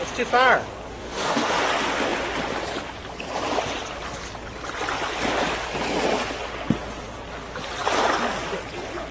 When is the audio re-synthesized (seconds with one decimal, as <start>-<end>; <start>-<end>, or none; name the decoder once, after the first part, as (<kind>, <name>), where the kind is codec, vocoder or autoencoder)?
0.9-1.6 (autoencoder, DAC-VAE)